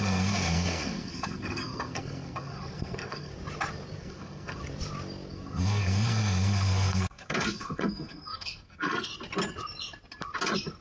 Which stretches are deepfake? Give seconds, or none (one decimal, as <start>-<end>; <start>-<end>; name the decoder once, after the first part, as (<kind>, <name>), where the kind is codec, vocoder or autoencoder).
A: 0.0-3.3 (codec, SNAC); 4.0-4.6; 5.3-9.1